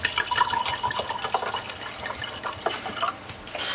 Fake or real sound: real